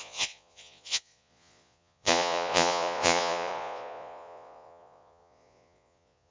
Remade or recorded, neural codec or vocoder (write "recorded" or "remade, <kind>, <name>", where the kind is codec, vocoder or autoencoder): remade, vocoder, Vocos